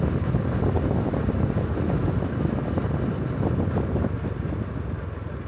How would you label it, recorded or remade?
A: recorded